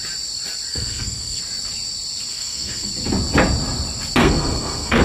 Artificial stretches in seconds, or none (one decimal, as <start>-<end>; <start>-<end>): 0.7-1.4; 2.3-2.9; 4.2-5.0